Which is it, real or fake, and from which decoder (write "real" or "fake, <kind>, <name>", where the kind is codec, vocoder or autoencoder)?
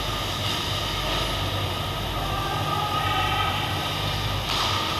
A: real